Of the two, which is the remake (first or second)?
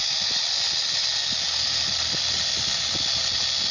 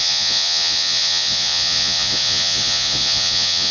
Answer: second